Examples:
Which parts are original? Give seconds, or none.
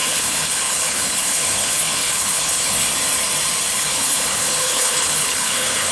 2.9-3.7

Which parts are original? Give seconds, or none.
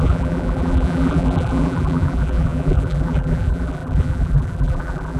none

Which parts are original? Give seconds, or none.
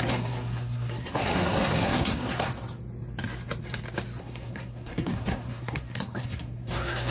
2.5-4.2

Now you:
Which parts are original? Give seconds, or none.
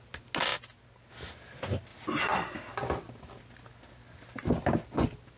0.0-5.4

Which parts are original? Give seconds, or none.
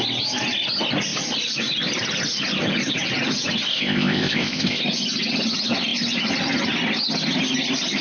0.0-3.7; 4.8-8.0